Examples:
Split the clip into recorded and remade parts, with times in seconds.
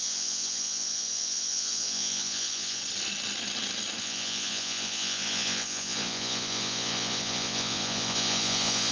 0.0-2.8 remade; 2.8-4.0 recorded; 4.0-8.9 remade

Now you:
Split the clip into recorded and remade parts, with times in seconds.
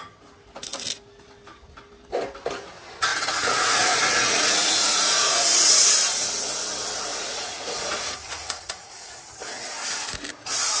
0.0-3.1 recorded; 3.1-5.7 remade; 5.7-7.1 recorded; 7.1-9.2 remade; 9.2-10.8 recorded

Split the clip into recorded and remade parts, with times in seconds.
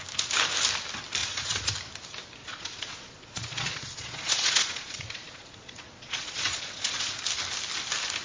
0.0-1.2 recorded; 1.2-1.7 remade; 1.7-2.4 recorded; 2.4-7.2 remade; 7.2-8.2 recorded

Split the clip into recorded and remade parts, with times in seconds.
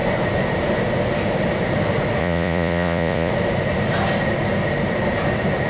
0.0-2.2 recorded; 2.2-3.3 remade; 3.3-5.7 recorded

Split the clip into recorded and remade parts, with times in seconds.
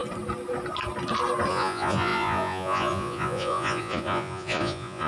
0.0-1.5 recorded; 1.5-5.1 remade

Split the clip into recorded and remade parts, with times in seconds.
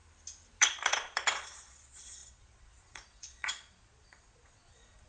0.0-0.6 recorded; 0.6-5.1 remade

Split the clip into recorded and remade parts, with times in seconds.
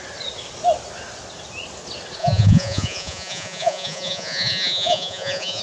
0.0-2.2 recorded; 2.2-5.6 remade